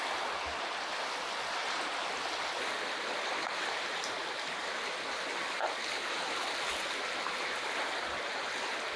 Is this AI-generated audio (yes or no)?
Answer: no